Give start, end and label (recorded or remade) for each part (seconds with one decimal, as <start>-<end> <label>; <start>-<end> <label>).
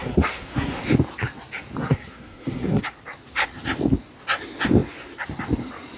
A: 0.0-0.8 remade; 0.8-1.8 recorded; 1.8-2.8 remade; 2.8-6.0 recorded